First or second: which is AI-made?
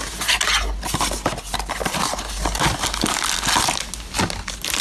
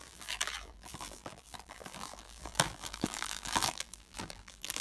second